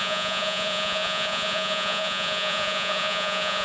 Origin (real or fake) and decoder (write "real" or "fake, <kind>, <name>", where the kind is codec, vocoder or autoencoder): fake, vocoder, Vocos